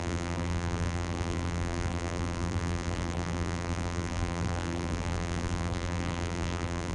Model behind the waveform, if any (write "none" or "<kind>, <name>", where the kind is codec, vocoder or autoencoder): vocoder, BigVGAN v2